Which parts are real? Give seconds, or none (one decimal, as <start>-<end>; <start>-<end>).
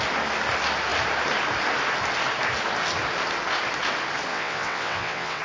0.0-4.3